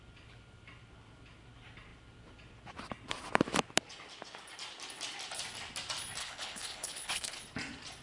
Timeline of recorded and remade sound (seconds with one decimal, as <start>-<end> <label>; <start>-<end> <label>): 0.0-6.2 recorded; 6.2-7.4 remade; 7.4-8.0 recorded